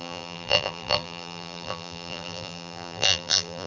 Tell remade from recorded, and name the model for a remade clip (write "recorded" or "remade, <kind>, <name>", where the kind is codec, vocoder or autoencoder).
remade, vocoder, BigVGAN v2